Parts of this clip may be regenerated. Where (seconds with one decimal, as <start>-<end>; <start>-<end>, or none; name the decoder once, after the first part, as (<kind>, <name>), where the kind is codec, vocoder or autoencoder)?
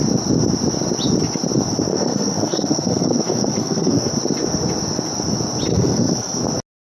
1.9-4.1 (codec, SNAC); 5.7-6.4